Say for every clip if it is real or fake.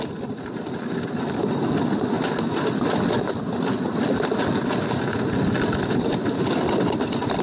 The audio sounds real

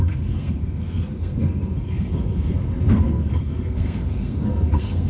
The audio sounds fake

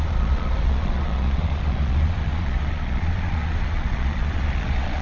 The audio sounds fake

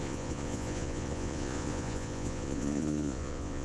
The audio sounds fake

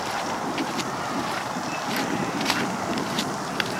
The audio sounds fake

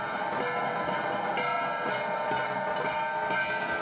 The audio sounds real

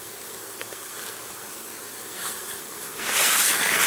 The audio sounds fake